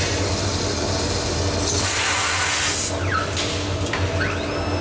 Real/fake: real